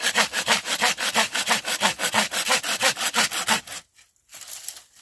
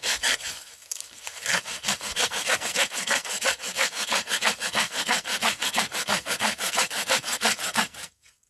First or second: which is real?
first